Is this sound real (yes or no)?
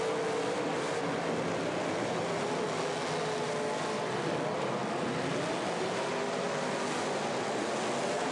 yes